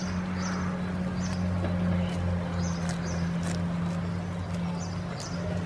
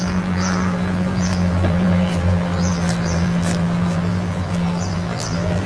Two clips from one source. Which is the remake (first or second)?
second